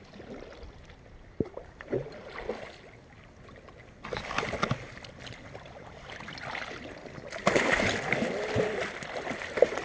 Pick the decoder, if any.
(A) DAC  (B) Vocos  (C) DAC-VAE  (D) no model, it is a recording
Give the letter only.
D